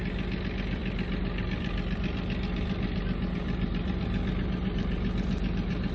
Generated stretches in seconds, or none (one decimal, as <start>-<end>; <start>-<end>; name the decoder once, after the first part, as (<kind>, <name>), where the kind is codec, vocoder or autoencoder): none

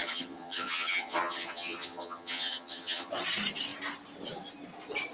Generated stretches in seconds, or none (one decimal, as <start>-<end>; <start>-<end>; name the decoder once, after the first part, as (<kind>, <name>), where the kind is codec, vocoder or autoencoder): 0.0-3.1 (vocoder, HiFi-GAN)

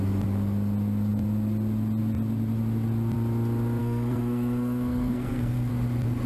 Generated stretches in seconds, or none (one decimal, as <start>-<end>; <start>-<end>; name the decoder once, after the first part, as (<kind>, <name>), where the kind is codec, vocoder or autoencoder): 3.8-5.7 (codec, SNAC)

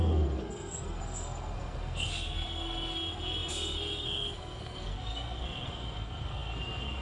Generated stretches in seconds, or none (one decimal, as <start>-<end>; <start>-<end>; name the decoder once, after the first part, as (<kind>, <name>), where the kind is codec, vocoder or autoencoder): 0.0-7.0 (codec, SNAC)

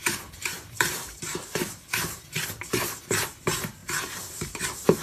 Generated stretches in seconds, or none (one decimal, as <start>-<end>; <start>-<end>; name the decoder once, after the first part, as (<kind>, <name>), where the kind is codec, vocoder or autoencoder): 0.0-2.7 (vocoder, BigVGAN v2); 3.8-4.4